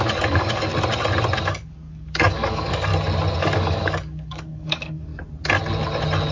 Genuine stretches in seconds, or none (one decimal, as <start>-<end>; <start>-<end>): 0.7-1.5; 2.9-3.4; 5.1-6.3